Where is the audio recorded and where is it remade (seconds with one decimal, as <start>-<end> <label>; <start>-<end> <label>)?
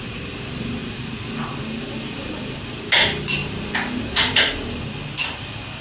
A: 0.0-5.8 recorded